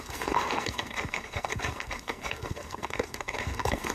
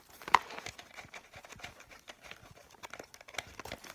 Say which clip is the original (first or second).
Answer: second